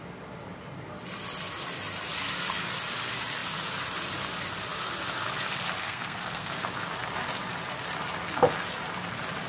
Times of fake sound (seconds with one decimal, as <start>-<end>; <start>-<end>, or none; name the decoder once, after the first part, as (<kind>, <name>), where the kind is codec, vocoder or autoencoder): 5.8-6.5 (codec, SNAC)